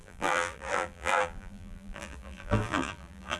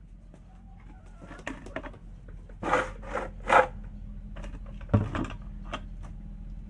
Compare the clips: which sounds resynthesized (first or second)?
first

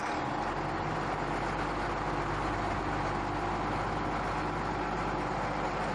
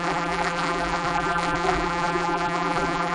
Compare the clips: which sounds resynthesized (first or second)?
second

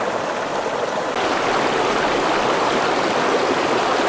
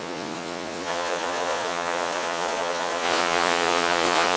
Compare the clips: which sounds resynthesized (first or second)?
second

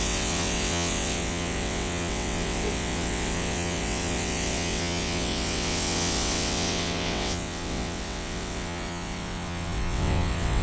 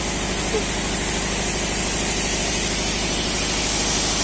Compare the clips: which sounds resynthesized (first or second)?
first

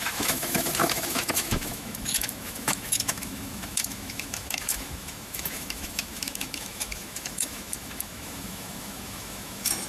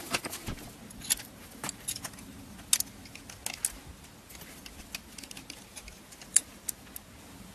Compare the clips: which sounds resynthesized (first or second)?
first